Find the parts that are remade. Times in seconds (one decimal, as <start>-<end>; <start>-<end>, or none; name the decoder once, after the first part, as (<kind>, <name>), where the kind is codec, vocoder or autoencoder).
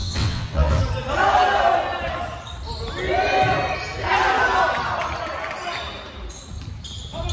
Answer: 0.0-0.8 (vocoder, WaveNeXt)